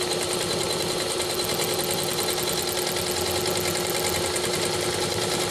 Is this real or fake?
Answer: real